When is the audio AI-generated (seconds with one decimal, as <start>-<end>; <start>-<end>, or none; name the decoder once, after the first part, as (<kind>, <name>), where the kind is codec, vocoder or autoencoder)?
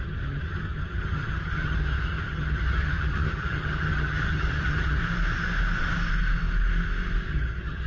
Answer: 0.0-5.0 (vocoder, HiFi-GAN); 7.3-7.9